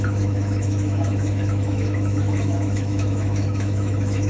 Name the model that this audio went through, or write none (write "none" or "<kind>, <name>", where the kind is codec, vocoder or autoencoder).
autoencoder, DAC-VAE